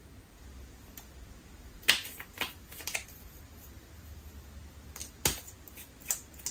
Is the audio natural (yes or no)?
yes